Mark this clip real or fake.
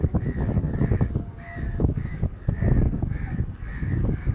fake